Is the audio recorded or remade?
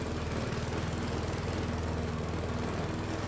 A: recorded